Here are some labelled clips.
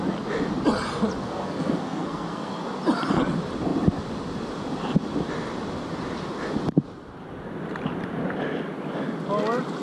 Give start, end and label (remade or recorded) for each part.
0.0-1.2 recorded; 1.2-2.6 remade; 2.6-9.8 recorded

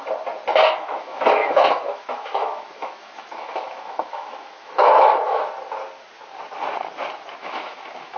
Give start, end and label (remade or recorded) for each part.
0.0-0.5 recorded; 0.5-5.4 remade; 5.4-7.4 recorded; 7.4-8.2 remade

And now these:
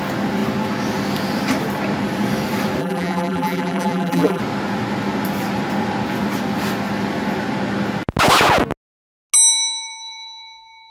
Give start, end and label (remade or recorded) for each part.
0.0-2.8 recorded; 2.8-4.4 remade; 4.4-10.9 recorded

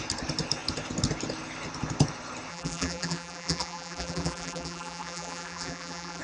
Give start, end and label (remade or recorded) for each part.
0.0-2.5 recorded; 2.5-6.2 remade

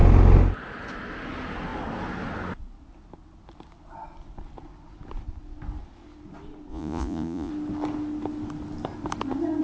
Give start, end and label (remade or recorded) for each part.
0.0-6.7 recorded; 6.7-7.5 remade; 7.5-9.6 recorded